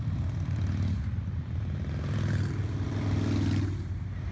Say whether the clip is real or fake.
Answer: real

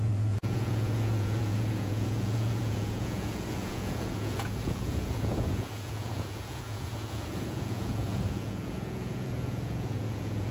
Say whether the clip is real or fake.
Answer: fake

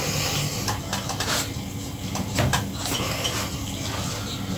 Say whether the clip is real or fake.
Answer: real